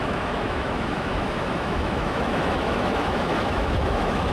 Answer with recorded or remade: remade